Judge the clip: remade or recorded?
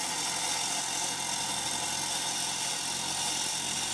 recorded